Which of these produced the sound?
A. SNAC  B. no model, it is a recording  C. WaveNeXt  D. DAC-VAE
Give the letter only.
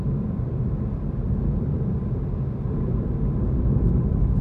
B